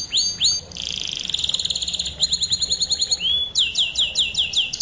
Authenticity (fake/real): real